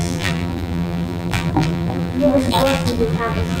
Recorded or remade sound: remade